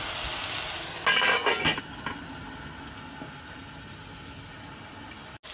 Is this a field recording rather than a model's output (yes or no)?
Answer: yes